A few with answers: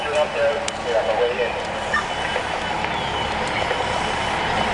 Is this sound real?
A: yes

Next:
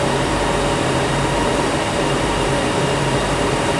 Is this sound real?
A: no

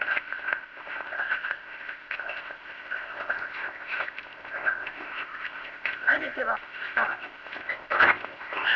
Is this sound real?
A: no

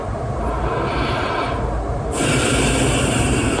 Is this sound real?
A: yes